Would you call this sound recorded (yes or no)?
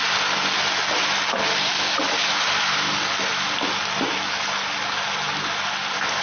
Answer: yes